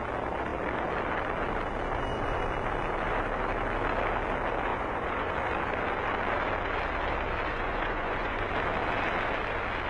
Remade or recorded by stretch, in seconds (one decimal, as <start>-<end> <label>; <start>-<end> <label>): 0.0-4.7 recorded; 4.7-5.3 remade; 5.3-7.5 recorded; 7.5-8.5 remade; 8.5-9.9 recorded